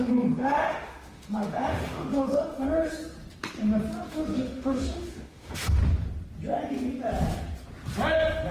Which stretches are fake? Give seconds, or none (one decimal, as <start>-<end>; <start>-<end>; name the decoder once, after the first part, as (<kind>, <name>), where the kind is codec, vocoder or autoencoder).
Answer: 0.0-3.0 (autoencoder, DAC-VAE); 4.1-5.8